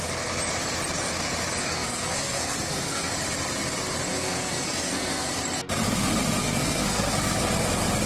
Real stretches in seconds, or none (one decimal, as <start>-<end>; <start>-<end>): 0.0-1.6; 3.1-4.1; 5.3-6.4; 7.4-8.1